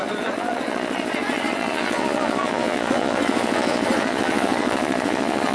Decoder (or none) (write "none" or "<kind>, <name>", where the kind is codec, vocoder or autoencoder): vocoder, Vocos